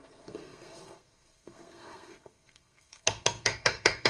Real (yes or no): no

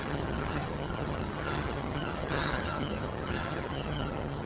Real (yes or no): no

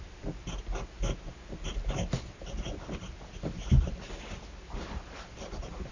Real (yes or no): yes